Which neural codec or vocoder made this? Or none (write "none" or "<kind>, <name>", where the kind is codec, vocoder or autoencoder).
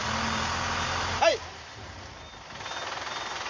none